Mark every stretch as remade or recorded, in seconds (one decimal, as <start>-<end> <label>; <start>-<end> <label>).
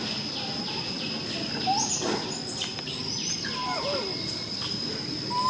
0.0-5.5 recorded